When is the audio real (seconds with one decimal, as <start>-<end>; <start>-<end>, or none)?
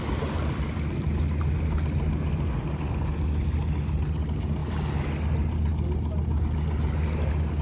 0.0-7.6